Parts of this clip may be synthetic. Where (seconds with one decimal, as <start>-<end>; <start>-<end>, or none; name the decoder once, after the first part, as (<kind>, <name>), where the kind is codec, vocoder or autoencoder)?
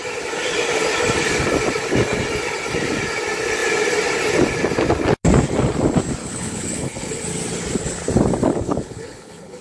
6.2-7.2 (codec, HILCodec); 8.5-9.6